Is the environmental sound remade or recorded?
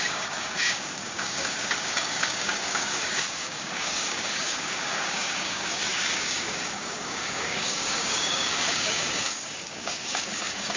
remade